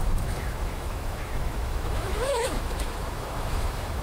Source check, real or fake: fake